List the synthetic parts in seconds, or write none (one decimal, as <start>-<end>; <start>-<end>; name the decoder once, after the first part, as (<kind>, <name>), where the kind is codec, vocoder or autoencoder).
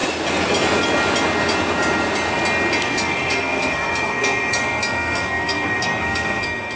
2.8-6.8 (codec, SNAC)